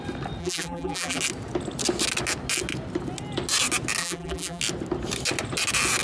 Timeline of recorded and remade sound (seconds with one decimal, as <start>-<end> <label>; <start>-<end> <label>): 0.0-0.4 recorded; 0.4-1.2 remade; 1.2-4.0 recorded; 4.0-4.6 remade; 4.6-6.0 recorded

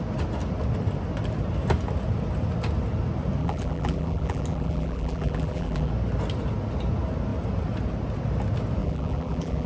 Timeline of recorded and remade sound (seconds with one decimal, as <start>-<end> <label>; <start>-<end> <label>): 0.0-3.4 recorded; 3.4-5.9 remade; 5.9-8.8 recorded; 8.8-9.7 remade